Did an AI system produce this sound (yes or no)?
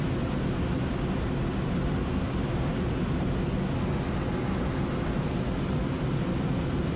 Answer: no